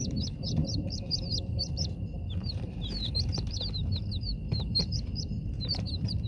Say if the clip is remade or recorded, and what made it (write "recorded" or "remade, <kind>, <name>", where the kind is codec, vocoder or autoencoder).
remade, vocoder, BigVGAN v2